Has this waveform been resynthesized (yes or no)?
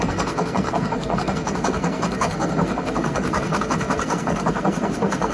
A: yes